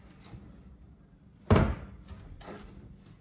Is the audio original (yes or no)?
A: no